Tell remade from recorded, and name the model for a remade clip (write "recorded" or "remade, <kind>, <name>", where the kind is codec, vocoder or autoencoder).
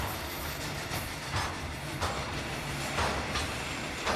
recorded